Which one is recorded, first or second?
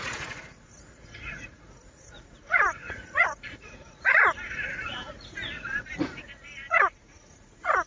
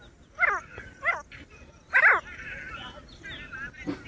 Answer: second